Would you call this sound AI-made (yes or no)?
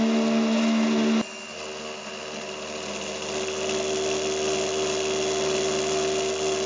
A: no